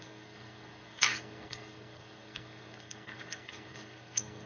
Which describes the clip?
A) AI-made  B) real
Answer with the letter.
A